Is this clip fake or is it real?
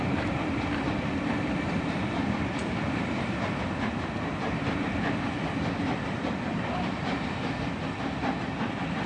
fake